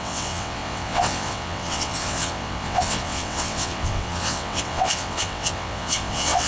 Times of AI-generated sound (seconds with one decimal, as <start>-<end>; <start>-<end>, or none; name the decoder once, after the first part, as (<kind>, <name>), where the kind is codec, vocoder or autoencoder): 0.0-6.5 (vocoder, WaveNeXt)